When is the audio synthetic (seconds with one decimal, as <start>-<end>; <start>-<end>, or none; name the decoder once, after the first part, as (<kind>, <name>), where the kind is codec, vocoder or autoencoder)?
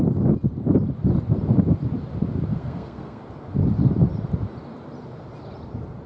2.5-3.2 (codec, SNAC)